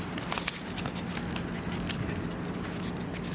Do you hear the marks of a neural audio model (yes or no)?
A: no